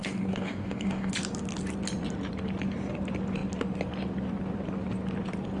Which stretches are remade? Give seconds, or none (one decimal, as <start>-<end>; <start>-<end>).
0.0-1.1